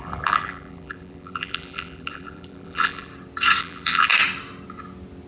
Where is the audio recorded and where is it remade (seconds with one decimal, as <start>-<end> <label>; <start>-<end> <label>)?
0.0-3.1 remade; 3.1-3.6 recorded; 3.6-4.1 remade; 4.1-5.3 recorded